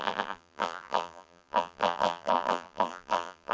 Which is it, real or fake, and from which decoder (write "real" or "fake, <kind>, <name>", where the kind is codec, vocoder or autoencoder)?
fake, vocoder, BigVGAN v2